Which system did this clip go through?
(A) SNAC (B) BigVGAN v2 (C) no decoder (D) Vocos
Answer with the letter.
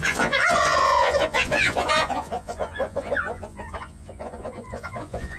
D